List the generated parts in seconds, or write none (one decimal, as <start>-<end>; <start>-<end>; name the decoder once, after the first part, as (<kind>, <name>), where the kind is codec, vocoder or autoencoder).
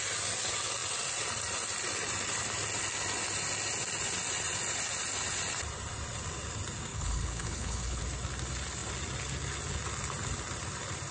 6.9-8.0 (codec, HILCodec)